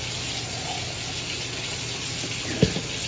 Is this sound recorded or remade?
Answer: recorded